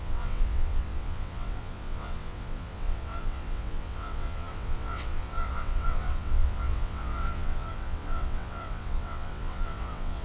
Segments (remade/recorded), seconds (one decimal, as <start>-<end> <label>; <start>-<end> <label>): 0.0-10.2 remade